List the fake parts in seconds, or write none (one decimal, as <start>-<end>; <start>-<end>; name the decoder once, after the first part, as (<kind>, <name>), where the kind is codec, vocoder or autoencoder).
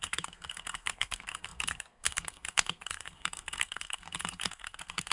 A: 0.0-5.1 (codec, SNAC)